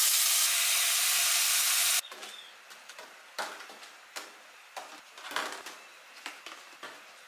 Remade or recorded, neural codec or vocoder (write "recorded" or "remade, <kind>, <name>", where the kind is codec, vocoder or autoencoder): recorded